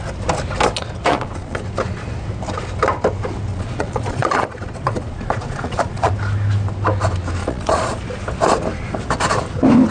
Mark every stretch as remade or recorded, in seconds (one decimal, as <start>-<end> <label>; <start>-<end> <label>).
0.0-1.1 recorded; 1.1-1.6 remade; 1.6-3.5 recorded; 3.5-6.1 remade; 6.1-7.4 recorded; 7.4-8.0 remade; 8.0-9.9 recorded